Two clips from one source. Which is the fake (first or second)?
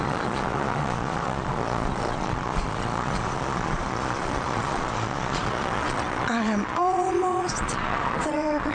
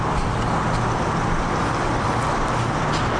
first